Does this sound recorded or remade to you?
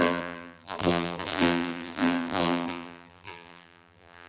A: remade